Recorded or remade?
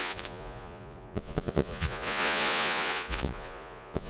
remade